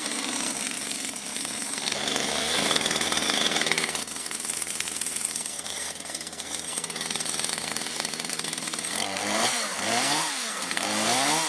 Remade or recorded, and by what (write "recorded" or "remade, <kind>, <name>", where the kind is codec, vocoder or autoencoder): remade, codec, SNAC